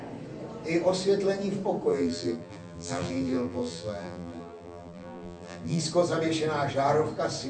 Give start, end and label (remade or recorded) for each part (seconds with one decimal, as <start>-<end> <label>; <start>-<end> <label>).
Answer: 0.0-1.9 recorded; 1.9-5.8 remade; 5.8-7.5 recorded